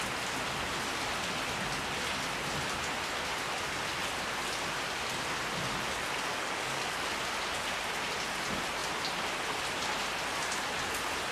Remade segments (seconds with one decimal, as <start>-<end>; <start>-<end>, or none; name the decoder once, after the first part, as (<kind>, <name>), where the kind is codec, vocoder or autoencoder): 6.3-7.2 (codec, DAC)